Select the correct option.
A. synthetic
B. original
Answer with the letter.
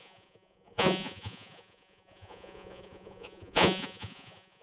A